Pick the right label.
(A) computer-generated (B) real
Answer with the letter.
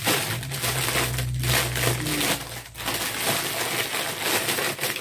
B